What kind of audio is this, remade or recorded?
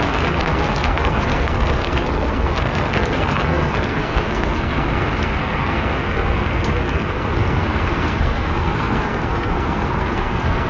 remade